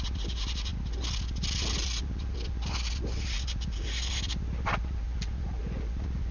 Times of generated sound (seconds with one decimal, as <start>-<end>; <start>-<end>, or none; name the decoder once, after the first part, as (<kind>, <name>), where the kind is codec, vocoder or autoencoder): none